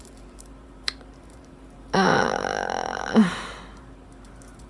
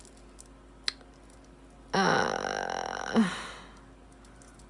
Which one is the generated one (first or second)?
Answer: first